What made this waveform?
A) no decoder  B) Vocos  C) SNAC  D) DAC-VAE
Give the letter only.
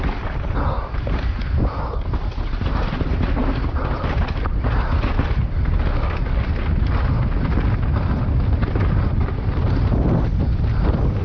A